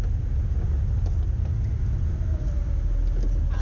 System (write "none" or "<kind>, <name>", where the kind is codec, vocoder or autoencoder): none